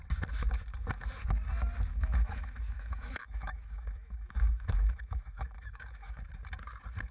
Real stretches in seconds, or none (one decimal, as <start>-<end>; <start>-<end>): 0.0-1.9; 6.2-7.1